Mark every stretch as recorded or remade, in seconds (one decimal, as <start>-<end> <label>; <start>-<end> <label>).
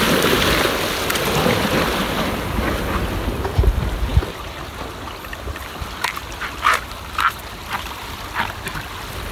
0.0-4.1 recorded; 4.1-4.7 remade; 4.7-6.2 recorded; 6.2-7.5 remade; 7.5-9.3 recorded